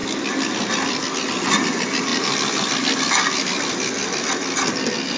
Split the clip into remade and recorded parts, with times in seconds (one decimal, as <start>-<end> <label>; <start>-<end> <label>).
0.0-5.2 recorded